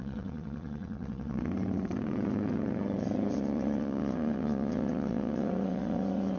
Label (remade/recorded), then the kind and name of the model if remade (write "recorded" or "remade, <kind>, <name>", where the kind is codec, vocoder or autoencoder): remade, vocoder, WaveNeXt